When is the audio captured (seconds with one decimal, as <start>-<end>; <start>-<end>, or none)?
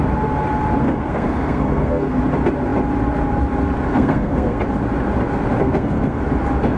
0.0-0.8; 2.2-3.9; 4.6-5.6; 6.2-6.8